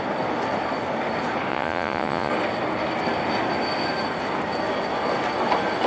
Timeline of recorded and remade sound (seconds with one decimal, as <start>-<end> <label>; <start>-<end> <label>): 0.0-1.5 recorded; 1.5-2.3 remade; 2.3-5.9 recorded